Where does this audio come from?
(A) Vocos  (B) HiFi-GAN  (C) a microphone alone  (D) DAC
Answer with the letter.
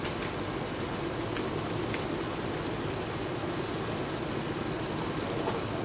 C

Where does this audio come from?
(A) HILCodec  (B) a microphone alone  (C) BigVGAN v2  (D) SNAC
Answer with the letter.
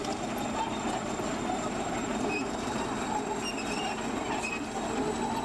B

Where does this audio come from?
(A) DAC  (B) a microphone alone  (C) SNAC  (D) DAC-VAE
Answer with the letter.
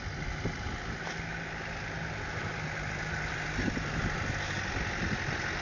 B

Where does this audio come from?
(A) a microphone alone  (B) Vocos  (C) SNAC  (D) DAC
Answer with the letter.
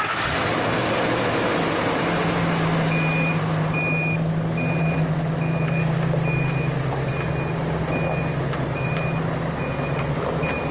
A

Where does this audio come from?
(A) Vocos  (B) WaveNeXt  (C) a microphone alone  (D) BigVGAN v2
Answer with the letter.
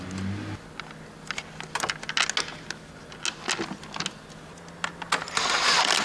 C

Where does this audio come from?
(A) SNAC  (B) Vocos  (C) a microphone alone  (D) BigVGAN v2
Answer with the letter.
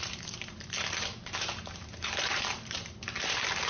D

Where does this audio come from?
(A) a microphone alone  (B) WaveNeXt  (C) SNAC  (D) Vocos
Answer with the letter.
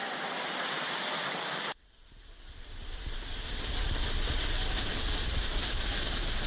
A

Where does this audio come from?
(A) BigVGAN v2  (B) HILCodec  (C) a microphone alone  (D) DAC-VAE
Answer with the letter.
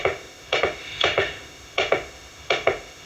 D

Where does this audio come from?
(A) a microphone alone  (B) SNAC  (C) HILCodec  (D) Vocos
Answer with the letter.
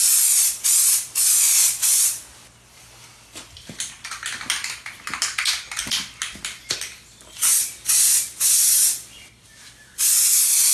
A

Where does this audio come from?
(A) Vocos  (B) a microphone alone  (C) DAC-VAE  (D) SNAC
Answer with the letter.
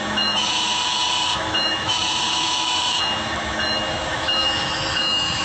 C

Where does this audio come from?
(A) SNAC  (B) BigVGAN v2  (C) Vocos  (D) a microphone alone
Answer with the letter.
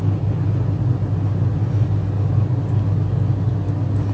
D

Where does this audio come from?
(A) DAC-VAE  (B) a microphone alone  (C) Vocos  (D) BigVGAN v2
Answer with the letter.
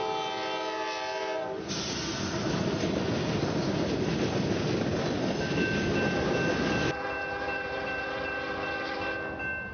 B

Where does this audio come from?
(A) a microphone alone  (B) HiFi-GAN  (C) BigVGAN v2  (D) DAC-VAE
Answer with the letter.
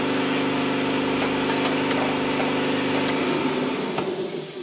A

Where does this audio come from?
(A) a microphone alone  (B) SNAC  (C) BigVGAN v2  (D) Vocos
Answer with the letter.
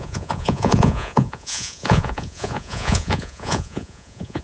D